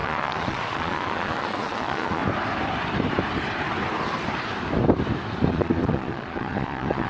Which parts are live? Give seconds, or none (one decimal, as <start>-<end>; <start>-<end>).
2.2-5.5